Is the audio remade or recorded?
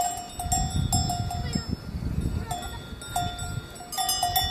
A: recorded